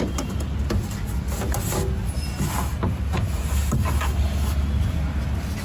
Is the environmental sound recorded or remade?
recorded